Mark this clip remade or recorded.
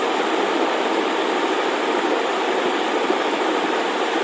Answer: recorded